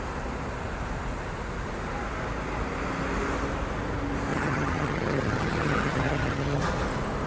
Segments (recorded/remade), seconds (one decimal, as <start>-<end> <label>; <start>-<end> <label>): 0.0-4.3 recorded; 4.3-6.6 remade; 6.6-7.3 recorded